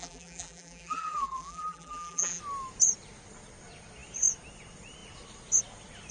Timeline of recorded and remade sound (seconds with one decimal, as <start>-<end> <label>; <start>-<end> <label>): 0.0-2.4 remade; 2.4-6.1 recorded